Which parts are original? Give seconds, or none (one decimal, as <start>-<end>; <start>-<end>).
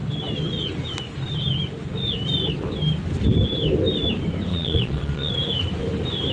0.0-4.5; 5.3-6.3